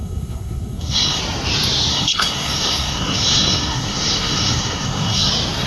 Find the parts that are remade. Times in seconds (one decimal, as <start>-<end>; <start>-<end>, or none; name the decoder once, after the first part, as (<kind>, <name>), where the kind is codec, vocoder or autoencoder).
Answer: 0.0-1.2 (codec, SNAC); 1.9-5.3